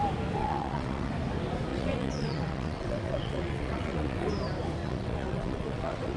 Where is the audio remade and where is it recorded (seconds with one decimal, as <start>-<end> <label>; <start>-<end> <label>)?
0.0-0.4 recorded; 0.4-1.1 remade; 1.1-1.7 recorded; 1.7-4.3 remade; 4.3-4.8 recorded; 4.8-6.2 remade